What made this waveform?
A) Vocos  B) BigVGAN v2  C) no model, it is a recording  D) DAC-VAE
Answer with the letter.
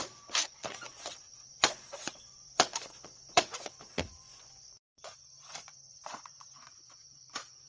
A